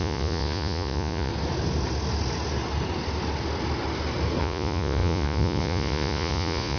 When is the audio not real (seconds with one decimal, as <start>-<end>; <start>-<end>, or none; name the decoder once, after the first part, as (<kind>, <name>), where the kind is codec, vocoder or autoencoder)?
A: 0.0-1.3 (vocoder, Vocos); 4.4-6.8